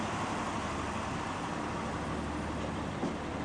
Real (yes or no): yes